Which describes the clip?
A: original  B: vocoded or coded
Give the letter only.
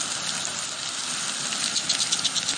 A